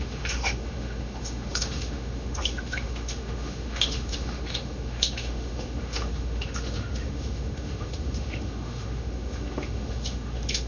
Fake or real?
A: fake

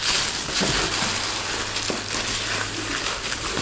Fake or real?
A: real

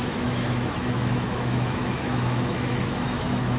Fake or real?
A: fake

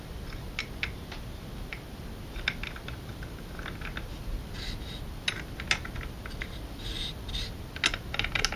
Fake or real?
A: real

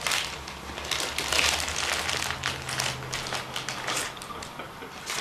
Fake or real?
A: real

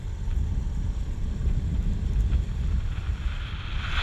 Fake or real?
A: real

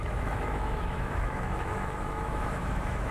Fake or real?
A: fake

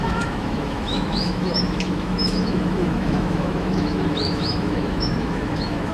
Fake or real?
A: fake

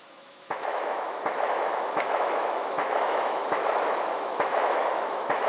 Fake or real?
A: fake